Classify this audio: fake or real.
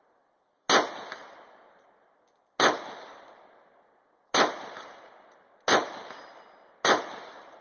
real